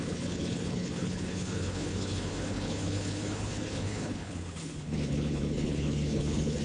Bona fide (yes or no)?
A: no